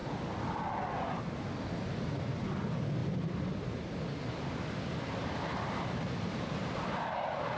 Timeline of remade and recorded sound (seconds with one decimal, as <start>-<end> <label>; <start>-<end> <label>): 0.0-7.6 recorded